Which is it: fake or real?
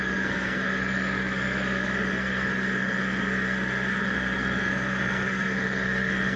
fake